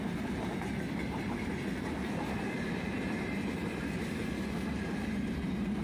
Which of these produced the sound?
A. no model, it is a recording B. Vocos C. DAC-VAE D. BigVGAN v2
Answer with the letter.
D